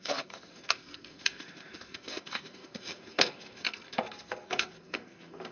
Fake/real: fake